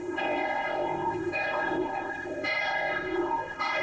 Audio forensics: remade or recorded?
remade